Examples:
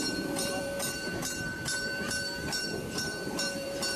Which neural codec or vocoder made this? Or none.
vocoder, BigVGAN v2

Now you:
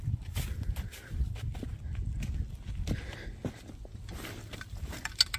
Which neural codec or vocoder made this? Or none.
none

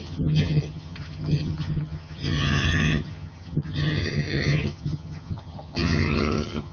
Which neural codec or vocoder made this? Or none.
vocoder, HiFi-GAN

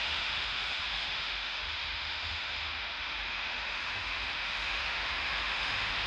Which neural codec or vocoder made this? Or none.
autoencoder, DAC-VAE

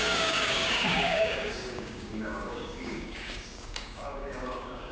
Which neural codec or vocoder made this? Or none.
codec, DAC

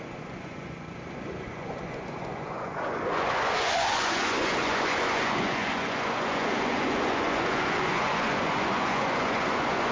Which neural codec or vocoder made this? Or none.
vocoder, Vocos